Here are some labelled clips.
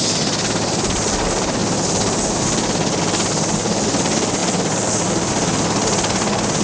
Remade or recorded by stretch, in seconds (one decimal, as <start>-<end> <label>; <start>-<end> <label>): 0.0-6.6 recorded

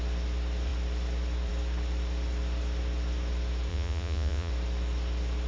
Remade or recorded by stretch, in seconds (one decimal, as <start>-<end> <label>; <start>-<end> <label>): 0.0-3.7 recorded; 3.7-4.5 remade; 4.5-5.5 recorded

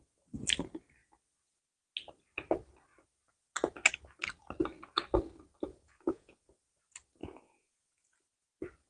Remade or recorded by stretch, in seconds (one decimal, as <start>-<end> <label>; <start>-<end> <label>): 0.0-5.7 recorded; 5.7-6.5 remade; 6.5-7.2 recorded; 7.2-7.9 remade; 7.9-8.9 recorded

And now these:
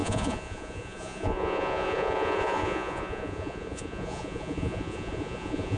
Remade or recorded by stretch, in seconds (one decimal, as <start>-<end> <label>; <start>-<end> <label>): 0.0-5.8 remade

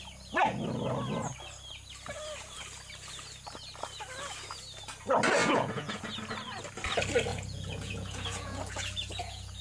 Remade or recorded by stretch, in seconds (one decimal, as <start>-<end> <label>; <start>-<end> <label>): 0.0-5.4 recorded; 5.4-6.0 remade; 6.0-7.3 recorded; 7.3-9.6 remade

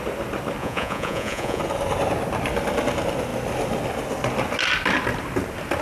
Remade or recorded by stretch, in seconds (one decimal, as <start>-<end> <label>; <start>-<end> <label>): 0.0-0.6 recorded; 0.6-1.6 remade; 1.6-5.8 recorded

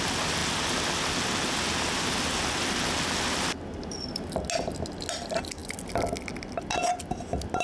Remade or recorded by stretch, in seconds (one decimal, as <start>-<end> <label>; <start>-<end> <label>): 0.0-7.6 recorded